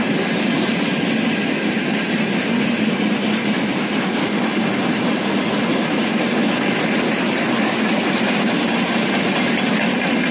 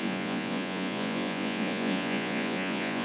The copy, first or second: second